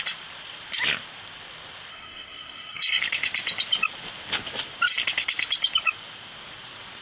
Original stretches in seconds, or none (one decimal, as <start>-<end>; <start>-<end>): 0.0-1.9; 3.0-7.0